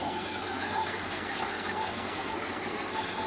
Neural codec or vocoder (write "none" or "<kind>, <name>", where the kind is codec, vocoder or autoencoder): codec, SNAC